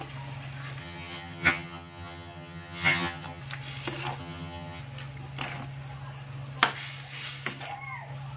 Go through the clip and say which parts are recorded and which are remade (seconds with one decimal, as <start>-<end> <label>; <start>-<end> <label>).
0.0-0.8 recorded; 0.8-3.4 remade; 3.4-4.2 recorded; 4.2-4.8 remade; 4.8-8.4 recorded

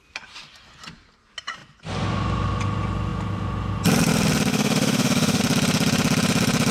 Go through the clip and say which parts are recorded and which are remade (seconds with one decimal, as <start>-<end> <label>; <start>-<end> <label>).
0.0-4.5 recorded; 4.5-5.4 remade; 5.4-6.7 recorded